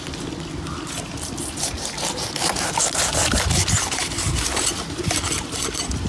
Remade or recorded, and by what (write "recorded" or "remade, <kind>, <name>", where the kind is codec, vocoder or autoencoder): recorded